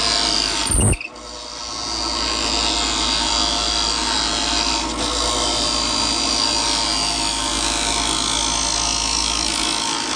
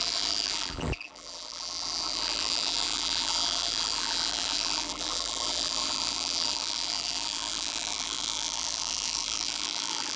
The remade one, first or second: second